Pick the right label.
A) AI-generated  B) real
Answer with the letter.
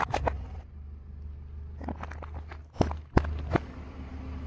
B